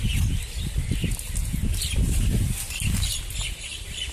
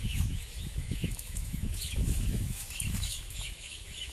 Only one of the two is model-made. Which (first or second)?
second